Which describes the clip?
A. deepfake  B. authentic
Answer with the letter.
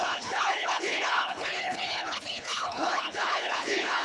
A